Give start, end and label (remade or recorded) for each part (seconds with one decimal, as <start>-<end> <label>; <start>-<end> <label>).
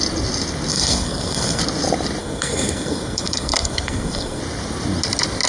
0.0-0.7 recorded; 0.7-1.6 remade; 1.6-2.2 recorded; 2.2-4.4 remade; 4.4-5.5 recorded